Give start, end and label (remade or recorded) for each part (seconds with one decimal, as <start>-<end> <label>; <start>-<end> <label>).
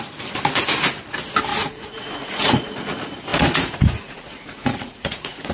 0.0-1.5 recorded; 1.5-2.7 remade; 2.7-3.3 recorded; 3.3-5.5 remade